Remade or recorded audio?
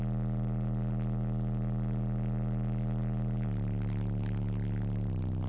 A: recorded